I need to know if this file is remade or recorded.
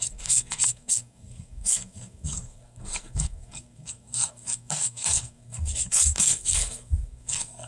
remade